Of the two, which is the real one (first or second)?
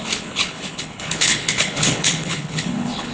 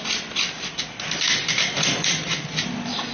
second